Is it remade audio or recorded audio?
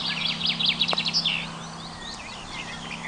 recorded